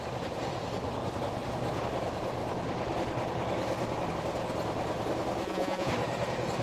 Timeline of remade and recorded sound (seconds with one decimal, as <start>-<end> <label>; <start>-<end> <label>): 0.0-5.4 recorded; 5.4-5.9 remade; 5.9-6.6 recorded